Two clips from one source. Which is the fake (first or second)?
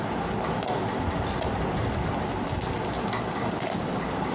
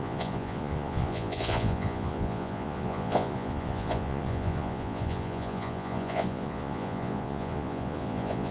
second